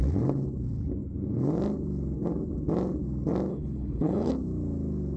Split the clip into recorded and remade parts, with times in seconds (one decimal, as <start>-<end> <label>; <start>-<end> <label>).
0.0-3.5 recorded; 3.5-4.3 remade; 4.3-5.2 recorded